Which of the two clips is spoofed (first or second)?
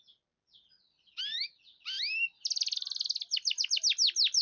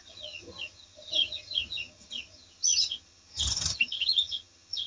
second